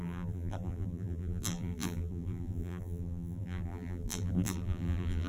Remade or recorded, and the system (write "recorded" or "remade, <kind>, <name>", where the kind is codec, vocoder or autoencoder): remade, vocoder, BigVGAN v2